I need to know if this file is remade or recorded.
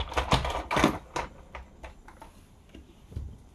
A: recorded